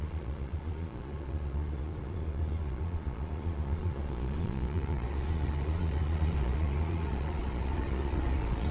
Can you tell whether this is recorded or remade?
remade